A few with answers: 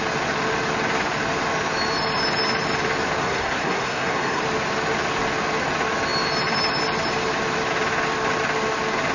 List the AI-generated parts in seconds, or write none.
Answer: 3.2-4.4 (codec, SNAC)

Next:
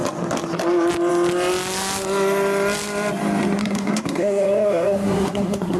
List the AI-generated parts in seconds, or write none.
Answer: 3.6-5.8 (codec, SNAC)

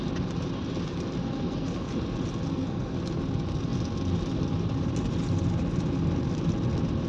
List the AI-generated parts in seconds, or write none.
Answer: 1.2-1.9 (codec, SNAC); 2.5-3.0

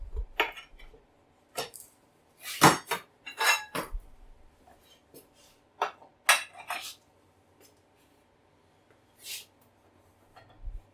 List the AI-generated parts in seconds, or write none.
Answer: none